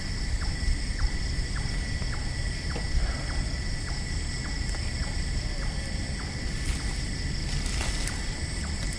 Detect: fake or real real